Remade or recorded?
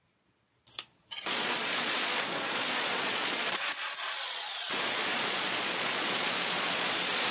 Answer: remade